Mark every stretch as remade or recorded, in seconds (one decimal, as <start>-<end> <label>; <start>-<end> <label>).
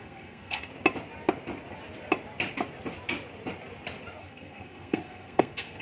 0.0-0.7 remade; 0.7-4.2 recorded; 4.2-5.8 remade